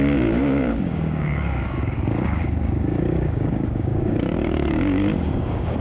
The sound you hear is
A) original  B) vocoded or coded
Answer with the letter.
B